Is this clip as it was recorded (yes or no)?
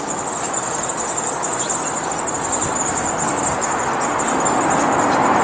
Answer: yes